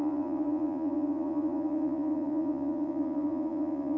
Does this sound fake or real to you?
fake